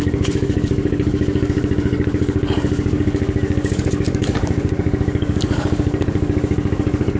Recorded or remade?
remade